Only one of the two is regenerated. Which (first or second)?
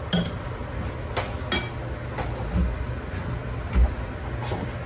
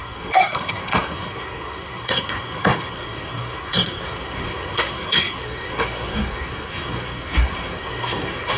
second